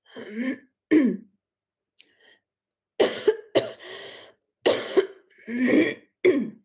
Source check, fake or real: real